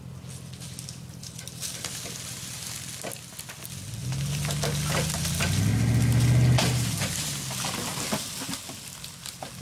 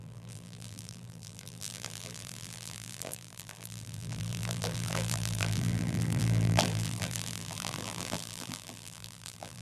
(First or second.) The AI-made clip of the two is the second